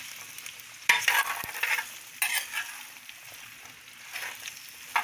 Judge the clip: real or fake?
real